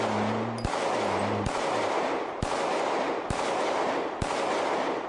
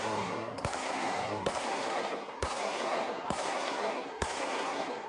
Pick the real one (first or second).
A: first